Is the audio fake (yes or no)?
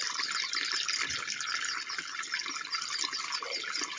no